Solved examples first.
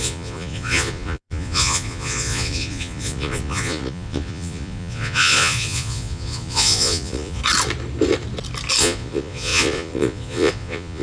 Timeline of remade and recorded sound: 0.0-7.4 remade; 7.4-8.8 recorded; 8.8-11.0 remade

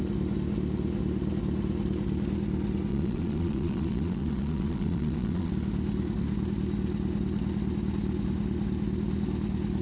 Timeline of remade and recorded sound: 0.0-2.9 recorded; 2.9-5.5 remade; 5.5-9.8 recorded

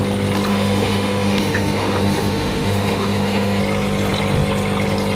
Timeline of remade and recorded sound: 0.0-0.5 recorded; 0.5-3.6 remade; 3.6-5.2 recorded

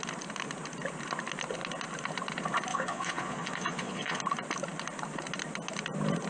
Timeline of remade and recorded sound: 0.0-2.7 recorded; 2.7-4.2 remade; 4.2-6.3 recorded

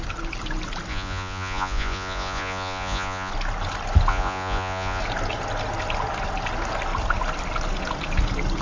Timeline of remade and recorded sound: 0.0-0.9 recorded; 0.9-3.3 remade; 3.3-4.1 recorded; 4.1-5.0 remade; 5.0-8.6 recorded